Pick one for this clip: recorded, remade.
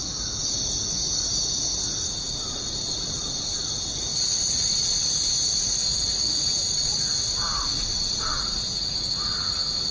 remade